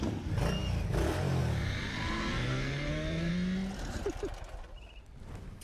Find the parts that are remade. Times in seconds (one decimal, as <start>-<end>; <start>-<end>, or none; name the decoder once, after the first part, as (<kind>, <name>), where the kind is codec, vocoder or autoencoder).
1.9-3.3 (codec, SNAC)